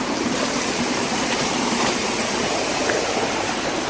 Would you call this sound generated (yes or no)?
yes